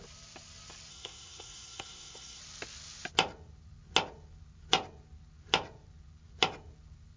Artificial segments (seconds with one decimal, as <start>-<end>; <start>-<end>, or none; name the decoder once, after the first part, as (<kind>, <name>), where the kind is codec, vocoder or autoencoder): 0.9-2.4 (codec, SNAC)